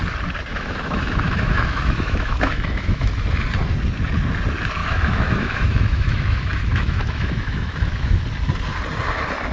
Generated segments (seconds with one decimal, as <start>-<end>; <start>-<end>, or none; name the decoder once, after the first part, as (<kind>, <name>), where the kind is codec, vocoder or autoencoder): 0.5-3.1 (autoencoder, DAC-VAE); 4.8-8.2